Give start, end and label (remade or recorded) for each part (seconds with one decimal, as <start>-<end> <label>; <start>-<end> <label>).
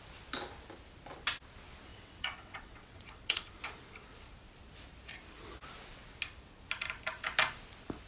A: 0.0-1.9 recorded; 1.9-3.6 remade; 3.6-8.1 recorded